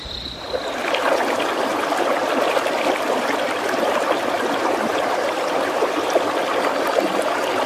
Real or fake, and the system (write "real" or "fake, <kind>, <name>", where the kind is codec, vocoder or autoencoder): real